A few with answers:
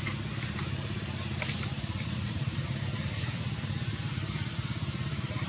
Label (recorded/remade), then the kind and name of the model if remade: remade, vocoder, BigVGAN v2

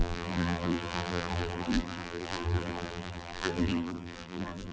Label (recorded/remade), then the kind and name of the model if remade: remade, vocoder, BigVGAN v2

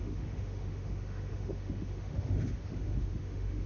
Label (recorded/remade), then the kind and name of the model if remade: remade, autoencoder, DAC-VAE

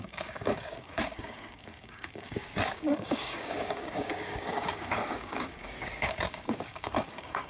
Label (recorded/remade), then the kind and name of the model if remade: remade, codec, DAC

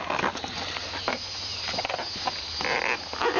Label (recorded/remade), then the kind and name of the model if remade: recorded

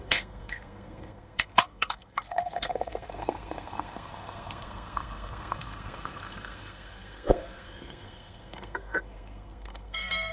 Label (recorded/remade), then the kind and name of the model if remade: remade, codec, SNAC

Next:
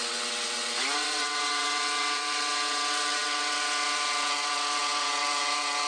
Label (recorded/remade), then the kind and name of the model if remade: remade, vocoder, WaveNeXt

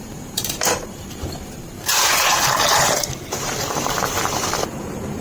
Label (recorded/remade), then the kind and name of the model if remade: remade, vocoder, BigVGAN v2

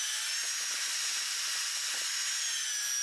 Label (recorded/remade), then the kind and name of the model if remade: recorded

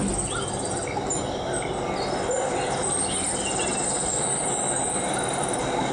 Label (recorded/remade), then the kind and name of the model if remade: recorded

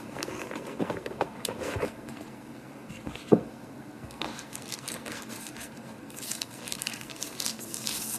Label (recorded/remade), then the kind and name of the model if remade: remade, codec, SNAC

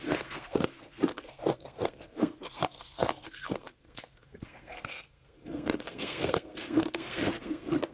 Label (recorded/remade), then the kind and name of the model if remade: remade, codec, SNAC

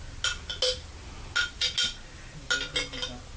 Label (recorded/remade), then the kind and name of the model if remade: recorded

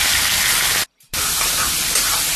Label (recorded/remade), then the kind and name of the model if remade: recorded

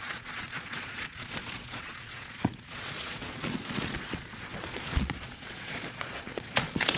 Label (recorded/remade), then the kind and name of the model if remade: remade, vocoder, Vocos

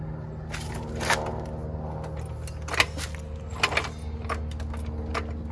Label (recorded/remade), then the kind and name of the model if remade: recorded